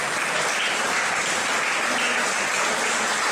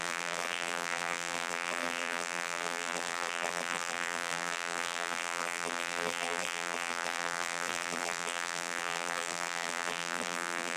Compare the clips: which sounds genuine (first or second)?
first